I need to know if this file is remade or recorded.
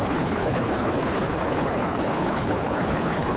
remade